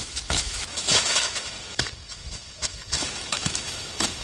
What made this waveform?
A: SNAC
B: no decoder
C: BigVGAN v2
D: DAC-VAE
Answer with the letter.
D